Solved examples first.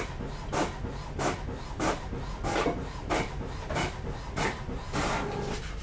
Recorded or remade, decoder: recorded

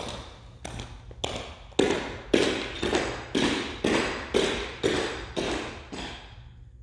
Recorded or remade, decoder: recorded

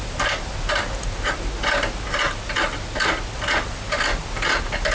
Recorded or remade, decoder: recorded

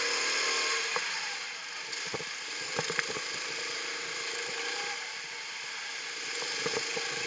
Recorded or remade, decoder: recorded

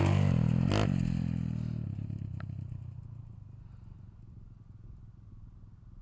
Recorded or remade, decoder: recorded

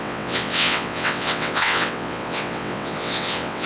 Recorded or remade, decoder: remade, vocoder, WaveNeXt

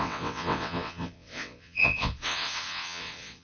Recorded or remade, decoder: remade, vocoder, WaveNeXt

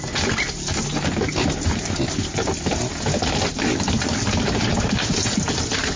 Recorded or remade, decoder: recorded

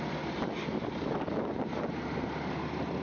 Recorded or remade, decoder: recorded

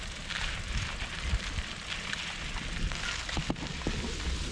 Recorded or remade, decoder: recorded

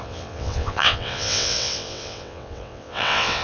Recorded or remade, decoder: remade, vocoder, WaveNeXt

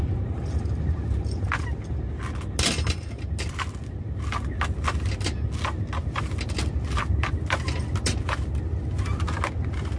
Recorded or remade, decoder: recorded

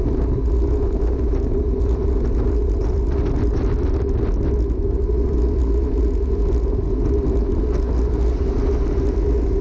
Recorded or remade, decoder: recorded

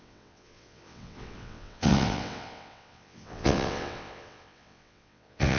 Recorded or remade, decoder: remade, vocoder, WaveNeXt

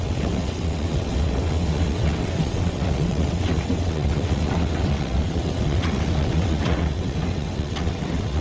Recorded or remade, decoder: remade, vocoder, WaveNeXt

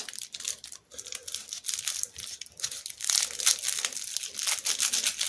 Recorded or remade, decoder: recorded